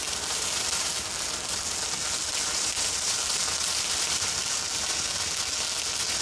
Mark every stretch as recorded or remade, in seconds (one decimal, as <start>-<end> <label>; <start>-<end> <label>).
0.0-0.9 remade; 0.9-2.3 recorded; 2.3-4.4 remade; 4.4-6.2 recorded